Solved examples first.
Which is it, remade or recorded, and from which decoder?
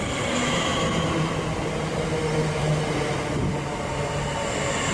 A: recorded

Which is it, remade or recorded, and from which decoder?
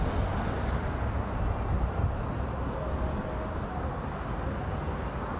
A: recorded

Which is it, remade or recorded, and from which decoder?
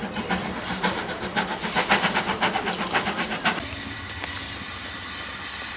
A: recorded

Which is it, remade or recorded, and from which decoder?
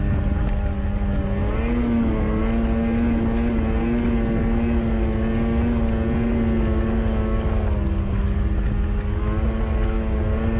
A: recorded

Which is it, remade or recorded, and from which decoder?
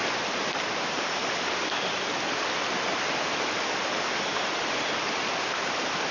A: recorded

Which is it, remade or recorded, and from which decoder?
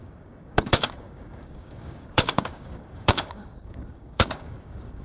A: remade, codec, DAC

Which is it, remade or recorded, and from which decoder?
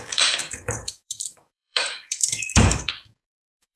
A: remade, codec, DAC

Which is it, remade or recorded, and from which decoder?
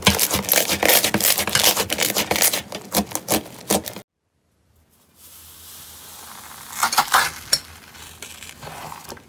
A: recorded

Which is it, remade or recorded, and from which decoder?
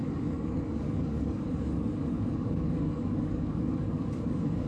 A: remade, codec, DAC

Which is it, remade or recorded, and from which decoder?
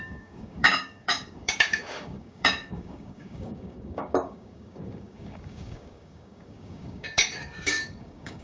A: remade, codec, DAC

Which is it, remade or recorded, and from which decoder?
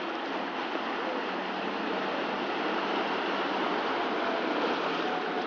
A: recorded